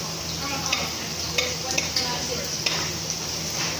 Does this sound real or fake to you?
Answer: real